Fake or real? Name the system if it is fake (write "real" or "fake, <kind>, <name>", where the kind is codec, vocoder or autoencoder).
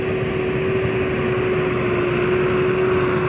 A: real